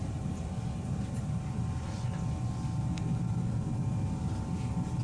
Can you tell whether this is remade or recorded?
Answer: recorded